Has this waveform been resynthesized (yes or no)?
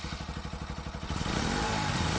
no